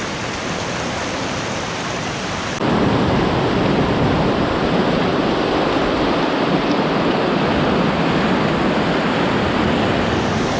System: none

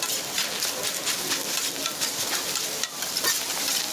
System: none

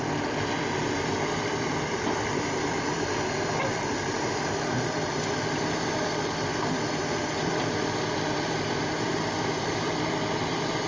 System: vocoder, BigVGAN v2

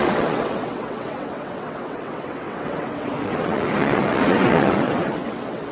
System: vocoder, WaveNeXt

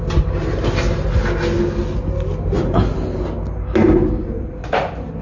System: none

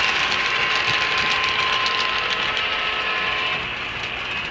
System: none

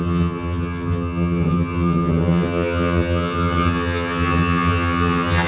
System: vocoder, HiFi-GAN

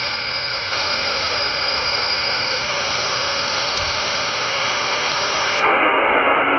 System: autoencoder, DAC-VAE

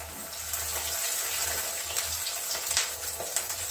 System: none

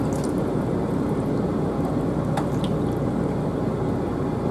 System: none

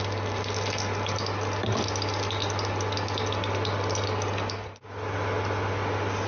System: none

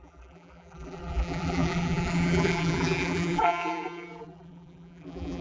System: vocoder, BigVGAN v2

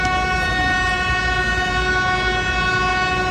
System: none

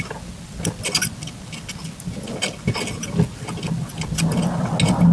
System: none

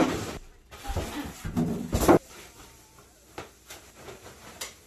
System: vocoder, BigVGAN v2